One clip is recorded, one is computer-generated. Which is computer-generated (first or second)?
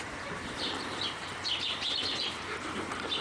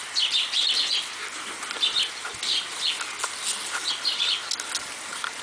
first